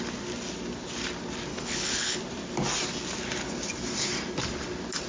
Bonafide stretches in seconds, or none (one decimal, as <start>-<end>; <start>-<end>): 0.0-1.5; 2.2-5.1